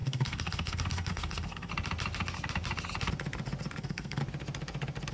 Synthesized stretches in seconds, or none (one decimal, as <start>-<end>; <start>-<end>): 0.0-1.7; 3.8-4.2